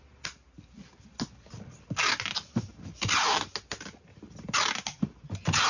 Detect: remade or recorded recorded